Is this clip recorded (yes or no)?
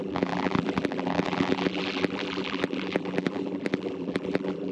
no